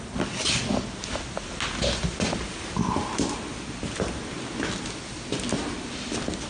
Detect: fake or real real